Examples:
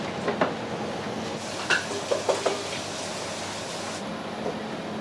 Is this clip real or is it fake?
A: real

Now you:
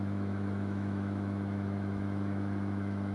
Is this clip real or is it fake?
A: fake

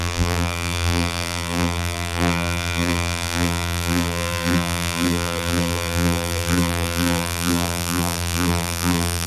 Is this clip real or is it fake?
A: fake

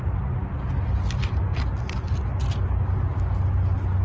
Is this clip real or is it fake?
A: real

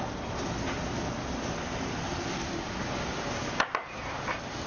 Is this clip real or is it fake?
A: real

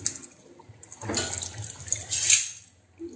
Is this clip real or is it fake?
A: real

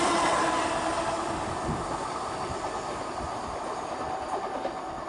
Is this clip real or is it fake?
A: real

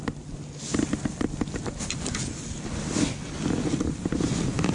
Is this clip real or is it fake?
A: real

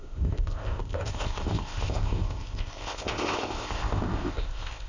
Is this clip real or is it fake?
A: fake